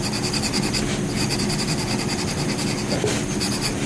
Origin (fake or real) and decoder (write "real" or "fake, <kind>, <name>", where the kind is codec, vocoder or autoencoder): real